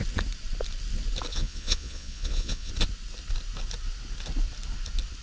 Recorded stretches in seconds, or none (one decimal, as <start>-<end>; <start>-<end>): 0.0-1.3; 2.7-5.2